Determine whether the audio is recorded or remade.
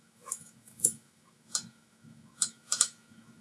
remade